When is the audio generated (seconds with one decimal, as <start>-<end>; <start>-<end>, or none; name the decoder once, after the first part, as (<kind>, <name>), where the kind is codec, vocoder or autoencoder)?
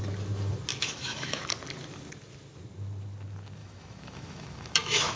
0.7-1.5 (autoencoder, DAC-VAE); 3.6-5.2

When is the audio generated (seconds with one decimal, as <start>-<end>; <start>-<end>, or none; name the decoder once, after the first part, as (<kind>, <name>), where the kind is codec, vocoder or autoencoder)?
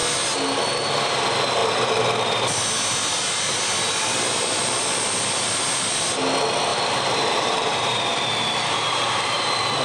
6.7-9.8 (vocoder, BigVGAN v2)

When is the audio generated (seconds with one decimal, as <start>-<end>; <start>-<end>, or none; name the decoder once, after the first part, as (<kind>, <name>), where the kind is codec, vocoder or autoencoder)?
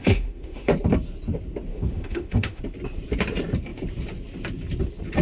0.0-0.7 (autoencoder, DAC-VAE); 1.7-2.6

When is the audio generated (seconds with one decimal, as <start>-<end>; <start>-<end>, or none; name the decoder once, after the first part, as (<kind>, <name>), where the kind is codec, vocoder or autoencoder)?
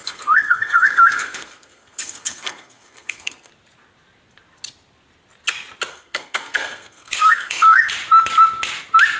0.0-3.5 (codec, SNAC); 5.9-7.9